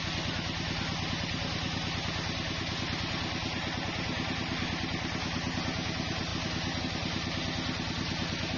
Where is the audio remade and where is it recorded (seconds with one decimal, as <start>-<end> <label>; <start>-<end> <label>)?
0.0-8.6 recorded

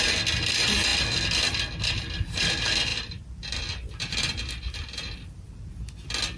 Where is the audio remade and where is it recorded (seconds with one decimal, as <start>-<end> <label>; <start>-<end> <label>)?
0.0-2.9 recorded; 2.9-5.7 remade; 5.7-6.4 recorded

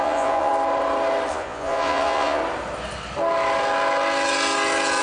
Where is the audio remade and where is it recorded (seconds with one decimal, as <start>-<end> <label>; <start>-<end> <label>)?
0.0-0.5 remade; 0.5-1.3 recorded; 1.3-2.4 remade; 2.4-5.0 recorded

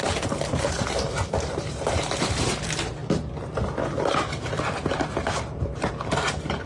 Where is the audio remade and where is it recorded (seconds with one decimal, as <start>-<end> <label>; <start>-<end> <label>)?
0.0-3.0 remade; 3.0-5.9 recorded; 5.9-6.7 remade

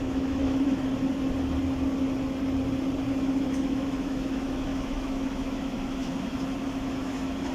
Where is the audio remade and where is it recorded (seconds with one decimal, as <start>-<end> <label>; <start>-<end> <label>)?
0.0-0.9 remade; 0.9-3.1 recorded; 3.1-7.5 remade

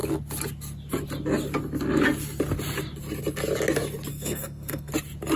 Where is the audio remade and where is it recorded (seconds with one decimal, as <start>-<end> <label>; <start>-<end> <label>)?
0.0-4.1 recorded; 4.1-4.9 remade; 4.9-5.4 recorded

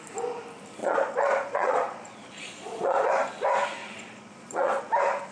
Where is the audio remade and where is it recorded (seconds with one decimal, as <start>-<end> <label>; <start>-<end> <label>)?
0.0-0.8 recorded; 0.8-3.1 remade; 3.1-3.8 recorded; 3.8-4.8 remade; 4.8-5.3 recorded

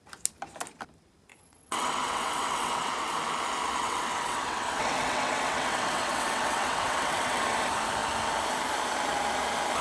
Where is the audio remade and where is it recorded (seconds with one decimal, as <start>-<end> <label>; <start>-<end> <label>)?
0.0-1.3 recorded; 1.3-3.2 remade; 3.2-3.8 recorded; 3.8-7.4 remade; 7.4-9.8 recorded